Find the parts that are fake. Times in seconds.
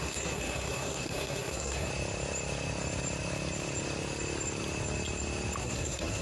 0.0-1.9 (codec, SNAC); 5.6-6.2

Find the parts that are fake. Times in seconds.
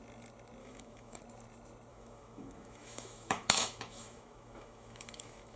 0.6-1.2 (autoencoder, DAC-VAE); 1.9-5.6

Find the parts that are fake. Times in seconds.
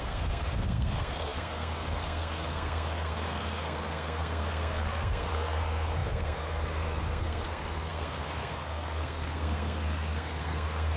0.0-11.0 (codec, SNAC)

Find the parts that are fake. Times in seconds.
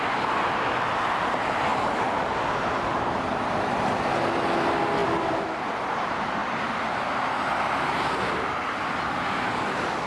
none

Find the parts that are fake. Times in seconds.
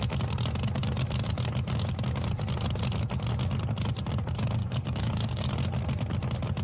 4.6-5.5 (codec, DAC)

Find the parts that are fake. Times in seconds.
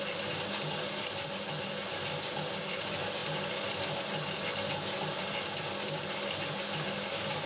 none